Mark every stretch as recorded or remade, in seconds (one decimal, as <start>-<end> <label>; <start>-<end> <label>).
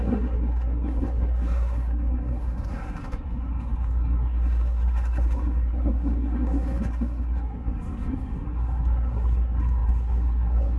0.0-10.8 remade